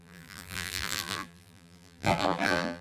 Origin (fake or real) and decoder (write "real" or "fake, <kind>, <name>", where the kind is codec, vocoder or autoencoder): fake, vocoder, BigVGAN v2